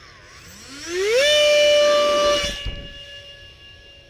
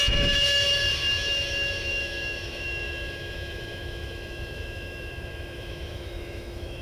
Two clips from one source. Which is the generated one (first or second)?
second